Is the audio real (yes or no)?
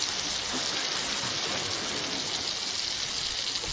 yes